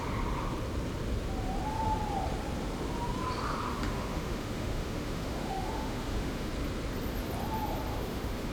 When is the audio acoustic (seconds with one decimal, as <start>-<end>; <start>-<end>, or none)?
0.0-3.7; 6.5-7.9